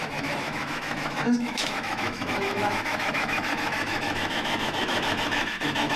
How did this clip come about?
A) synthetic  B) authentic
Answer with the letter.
A